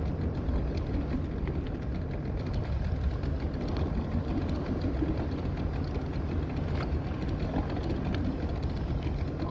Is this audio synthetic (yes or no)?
no